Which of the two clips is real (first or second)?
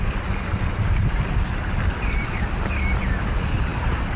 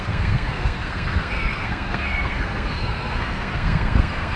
first